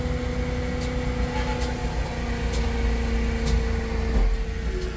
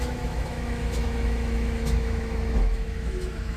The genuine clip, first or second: first